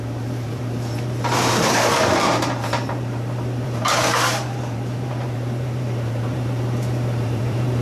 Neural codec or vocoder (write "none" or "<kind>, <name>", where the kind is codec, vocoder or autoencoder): vocoder, BigVGAN v2